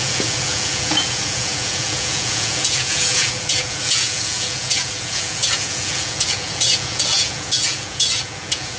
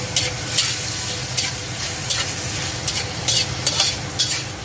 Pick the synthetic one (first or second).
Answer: first